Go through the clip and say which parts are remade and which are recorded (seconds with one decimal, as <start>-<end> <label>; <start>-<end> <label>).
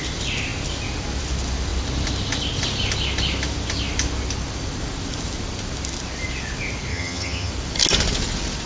0.0-6.9 recorded; 6.9-7.5 remade; 7.5-8.7 recorded